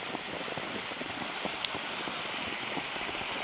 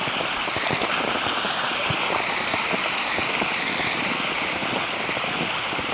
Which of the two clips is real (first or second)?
second